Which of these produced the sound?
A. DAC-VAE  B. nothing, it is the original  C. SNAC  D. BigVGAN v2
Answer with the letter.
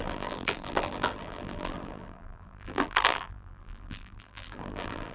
D